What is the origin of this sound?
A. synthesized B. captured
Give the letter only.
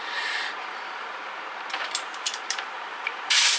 A